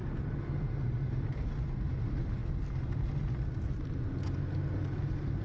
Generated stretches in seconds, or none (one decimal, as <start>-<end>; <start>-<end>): none